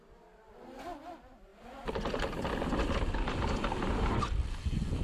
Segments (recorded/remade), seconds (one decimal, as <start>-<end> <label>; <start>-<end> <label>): 0.0-5.0 recorded